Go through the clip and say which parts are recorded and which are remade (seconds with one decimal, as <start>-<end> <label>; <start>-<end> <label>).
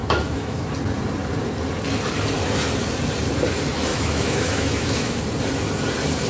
0.0-0.7 remade; 0.7-3.9 recorded; 3.9-5.2 remade; 5.2-6.3 recorded